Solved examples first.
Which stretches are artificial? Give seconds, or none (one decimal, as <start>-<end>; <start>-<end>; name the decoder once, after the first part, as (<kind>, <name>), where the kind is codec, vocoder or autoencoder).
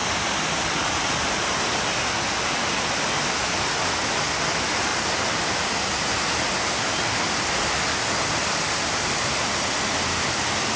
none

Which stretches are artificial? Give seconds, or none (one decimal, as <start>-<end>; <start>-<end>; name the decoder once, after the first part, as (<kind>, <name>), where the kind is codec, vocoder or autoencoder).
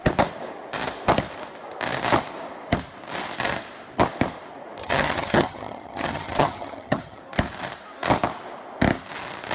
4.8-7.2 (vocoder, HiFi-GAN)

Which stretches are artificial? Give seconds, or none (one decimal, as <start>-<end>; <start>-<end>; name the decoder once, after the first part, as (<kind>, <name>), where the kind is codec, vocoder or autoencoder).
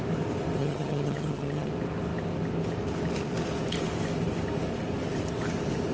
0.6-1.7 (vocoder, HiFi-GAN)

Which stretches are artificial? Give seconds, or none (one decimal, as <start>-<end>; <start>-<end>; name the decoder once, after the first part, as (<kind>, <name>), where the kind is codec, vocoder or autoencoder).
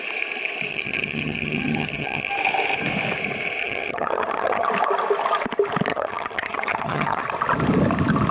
0.7-2.3 (vocoder, HiFi-GAN); 3.6-4.7; 5.9-7.2